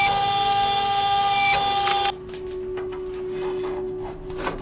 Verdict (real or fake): real